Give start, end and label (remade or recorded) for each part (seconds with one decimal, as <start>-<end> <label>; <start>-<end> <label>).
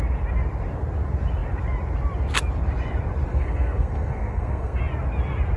0.0-3.3 recorded; 3.3-4.8 remade; 4.8-5.6 recorded